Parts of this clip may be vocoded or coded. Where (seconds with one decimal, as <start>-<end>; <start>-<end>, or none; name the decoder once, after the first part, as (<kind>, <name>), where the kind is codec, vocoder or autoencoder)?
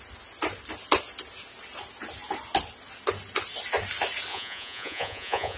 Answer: 4.3-5.6 (vocoder, Vocos)